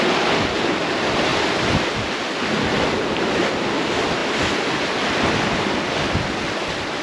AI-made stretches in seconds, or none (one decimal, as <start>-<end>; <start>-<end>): none